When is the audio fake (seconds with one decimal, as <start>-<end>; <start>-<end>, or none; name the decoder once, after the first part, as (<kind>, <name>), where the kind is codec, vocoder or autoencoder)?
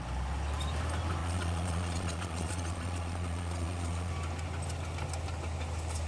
1.2-4.1 (vocoder, Vocos)